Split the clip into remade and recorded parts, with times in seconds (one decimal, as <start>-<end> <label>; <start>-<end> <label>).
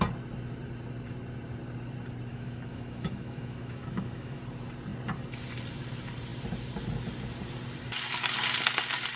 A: 0.0-2.3 recorded; 2.3-4.4 remade; 4.4-9.2 recorded